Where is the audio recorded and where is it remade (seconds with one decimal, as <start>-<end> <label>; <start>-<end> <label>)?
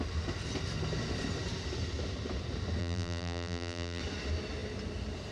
0.0-2.8 recorded; 2.8-4.0 remade; 4.0-5.3 recorded